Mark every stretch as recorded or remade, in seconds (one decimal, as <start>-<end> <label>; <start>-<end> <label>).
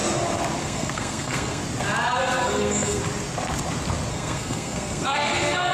0.0-0.6 recorded; 0.6-1.6 remade; 1.6-2.2 recorded; 2.2-3.0 remade; 3.0-4.1 recorded; 4.1-5.7 remade